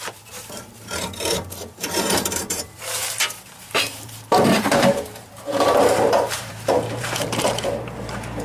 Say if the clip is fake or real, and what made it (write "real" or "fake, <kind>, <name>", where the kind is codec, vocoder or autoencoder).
fake, vocoder, BigVGAN v2